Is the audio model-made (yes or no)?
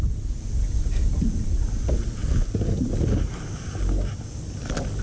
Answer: no